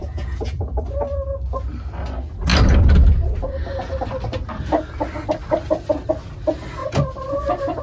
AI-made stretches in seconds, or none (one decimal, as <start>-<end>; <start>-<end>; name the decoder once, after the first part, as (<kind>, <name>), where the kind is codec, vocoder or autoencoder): 0.0-0.8 (vocoder, Vocos)